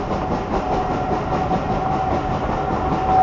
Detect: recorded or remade recorded